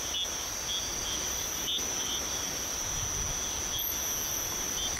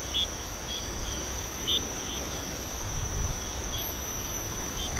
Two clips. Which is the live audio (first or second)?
first